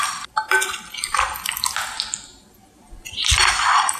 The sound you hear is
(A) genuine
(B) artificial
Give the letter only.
A